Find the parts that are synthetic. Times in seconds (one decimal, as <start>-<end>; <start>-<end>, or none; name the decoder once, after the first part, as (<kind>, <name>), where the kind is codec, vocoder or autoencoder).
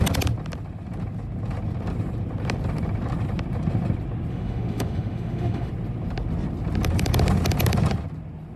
4.3-5.7 (autoencoder, DAC-VAE)